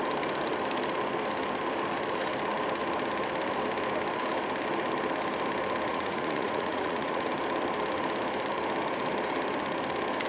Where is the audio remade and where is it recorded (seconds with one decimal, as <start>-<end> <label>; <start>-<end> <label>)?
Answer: 0.0-5.9 recorded; 5.9-7.3 remade; 7.3-10.3 recorded